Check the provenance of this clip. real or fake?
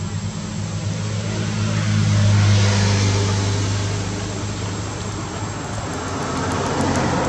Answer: real